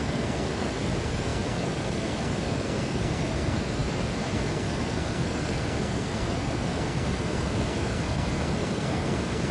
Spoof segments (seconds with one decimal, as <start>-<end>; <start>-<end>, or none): 0.0-9.5